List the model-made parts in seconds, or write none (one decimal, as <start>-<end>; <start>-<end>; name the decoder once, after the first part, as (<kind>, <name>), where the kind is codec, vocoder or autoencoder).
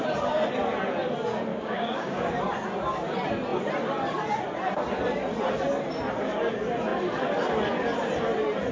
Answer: 1.5-2.3 (codec, DAC)